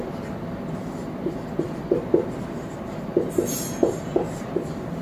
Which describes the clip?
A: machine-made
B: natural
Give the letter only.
B